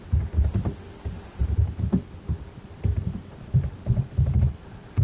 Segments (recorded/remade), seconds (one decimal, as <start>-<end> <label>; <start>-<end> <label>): 0.0-5.0 recorded